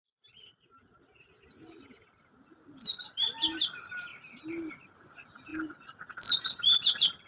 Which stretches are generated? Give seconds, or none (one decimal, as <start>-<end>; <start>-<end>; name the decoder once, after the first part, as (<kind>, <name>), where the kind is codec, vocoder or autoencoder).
none